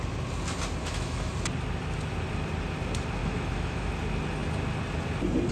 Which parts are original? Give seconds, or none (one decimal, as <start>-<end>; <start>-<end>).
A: 0.0-0.8; 1.3-3.2; 3.9-5.5